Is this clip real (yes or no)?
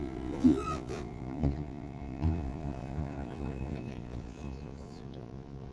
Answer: no